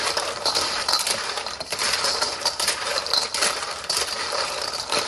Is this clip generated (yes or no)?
yes